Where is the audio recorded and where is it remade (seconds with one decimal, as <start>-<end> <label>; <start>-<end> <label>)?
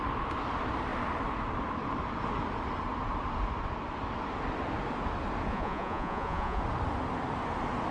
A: 0.0-5.5 recorded; 5.5-6.6 remade; 6.6-7.9 recorded